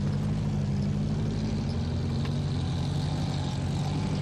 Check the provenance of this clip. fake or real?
real